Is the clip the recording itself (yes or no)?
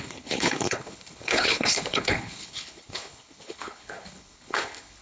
no